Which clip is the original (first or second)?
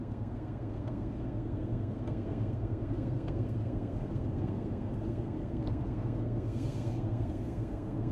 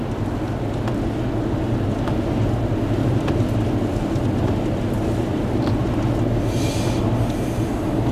second